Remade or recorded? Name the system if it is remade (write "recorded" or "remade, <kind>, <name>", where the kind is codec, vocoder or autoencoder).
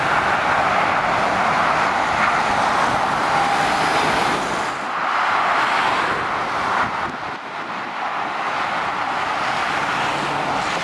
recorded